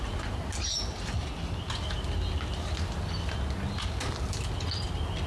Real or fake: real